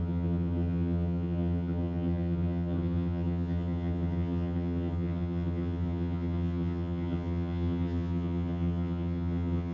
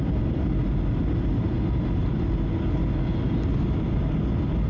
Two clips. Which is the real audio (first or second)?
second